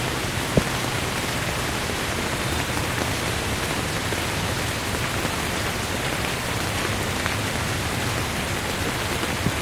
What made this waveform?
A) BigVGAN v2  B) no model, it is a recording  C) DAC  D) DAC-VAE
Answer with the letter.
B